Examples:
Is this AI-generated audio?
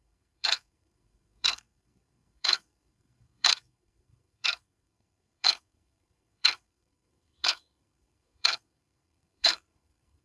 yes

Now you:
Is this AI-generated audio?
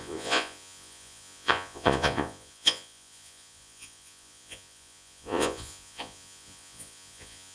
yes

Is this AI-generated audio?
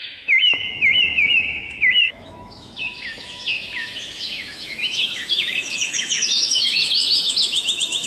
yes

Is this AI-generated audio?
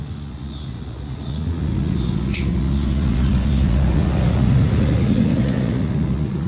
yes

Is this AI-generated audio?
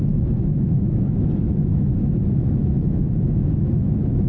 yes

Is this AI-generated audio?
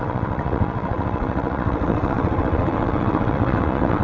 yes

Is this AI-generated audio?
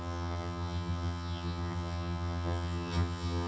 yes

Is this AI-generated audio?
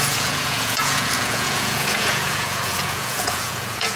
yes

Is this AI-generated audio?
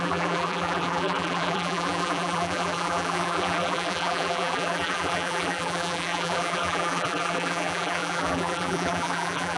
yes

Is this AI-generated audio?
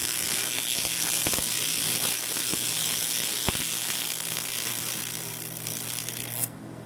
yes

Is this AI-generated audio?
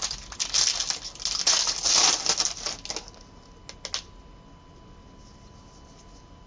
no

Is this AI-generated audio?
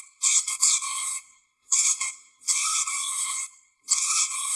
yes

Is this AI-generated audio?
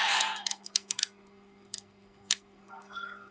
yes